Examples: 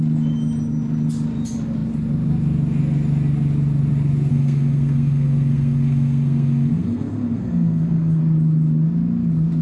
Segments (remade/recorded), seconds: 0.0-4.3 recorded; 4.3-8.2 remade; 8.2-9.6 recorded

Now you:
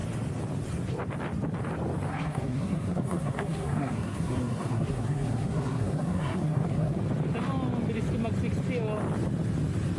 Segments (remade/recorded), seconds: 0.0-2.1 recorded; 2.1-7.0 remade; 7.0-10.0 recorded

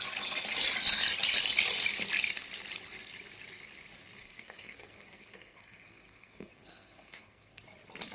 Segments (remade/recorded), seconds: 0.0-4.2 recorded; 4.2-7.6 remade; 7.6-8.1 recorded